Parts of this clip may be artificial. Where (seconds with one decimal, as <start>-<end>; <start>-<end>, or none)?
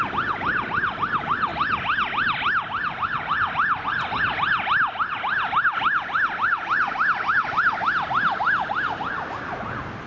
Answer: none